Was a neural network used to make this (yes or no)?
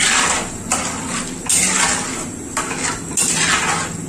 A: no